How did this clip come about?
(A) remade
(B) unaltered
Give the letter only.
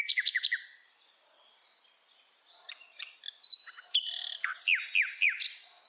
B